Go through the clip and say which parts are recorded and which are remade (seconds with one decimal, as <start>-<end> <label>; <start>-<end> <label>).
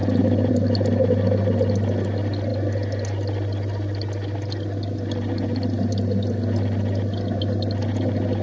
0.0-8.4 recorded